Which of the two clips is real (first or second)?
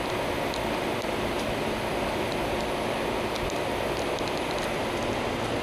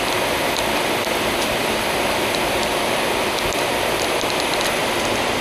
first